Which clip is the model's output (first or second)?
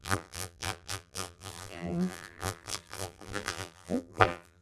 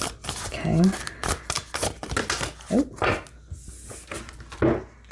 first